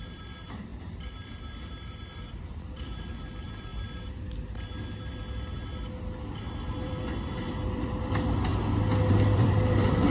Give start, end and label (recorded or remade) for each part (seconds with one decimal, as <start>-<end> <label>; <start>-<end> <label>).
0.0-0.7 remade; 0.7-2.4 recorded; 2.4-3.7 remade; 3.7-6.5 recorded; 6.5-8.5 remade; 8.5-9.1 recorded; 9.1-10.1 remade